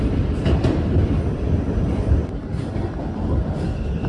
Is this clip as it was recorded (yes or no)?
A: no